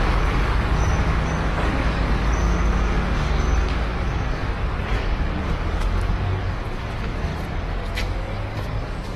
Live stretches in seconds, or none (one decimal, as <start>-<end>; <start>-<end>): 7.3-8.0